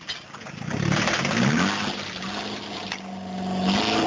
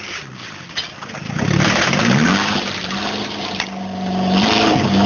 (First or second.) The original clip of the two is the first